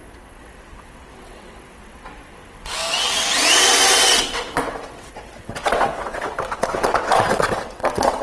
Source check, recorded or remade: remade